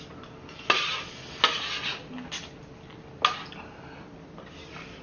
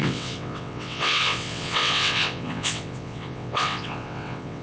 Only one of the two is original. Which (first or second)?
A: first